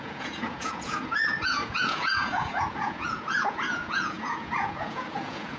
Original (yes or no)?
no